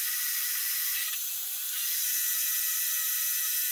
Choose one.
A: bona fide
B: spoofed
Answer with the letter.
A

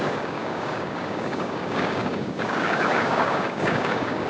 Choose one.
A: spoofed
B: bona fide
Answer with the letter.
A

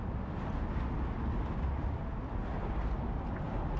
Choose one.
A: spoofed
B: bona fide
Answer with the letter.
B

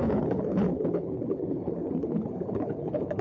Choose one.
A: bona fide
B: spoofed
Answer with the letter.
B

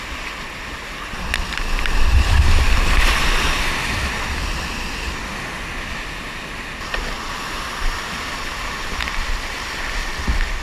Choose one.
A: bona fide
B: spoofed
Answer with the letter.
A